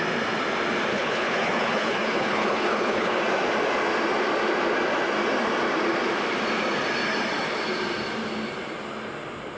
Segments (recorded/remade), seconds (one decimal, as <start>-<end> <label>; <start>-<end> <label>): 0.0-0.9 recorded; 0.9-3.2 remade; 3.2-9.6 recorded